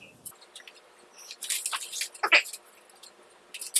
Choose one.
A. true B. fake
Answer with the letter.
A